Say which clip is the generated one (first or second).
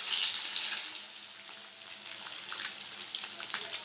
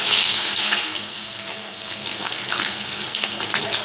second